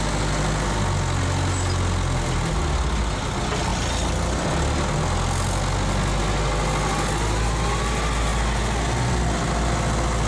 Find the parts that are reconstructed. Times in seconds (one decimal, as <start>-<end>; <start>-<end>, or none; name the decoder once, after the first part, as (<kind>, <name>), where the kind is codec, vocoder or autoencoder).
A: none